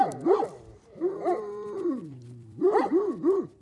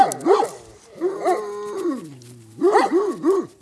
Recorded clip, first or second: second